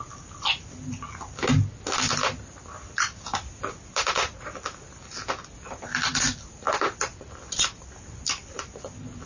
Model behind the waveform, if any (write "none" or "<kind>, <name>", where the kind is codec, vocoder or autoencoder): none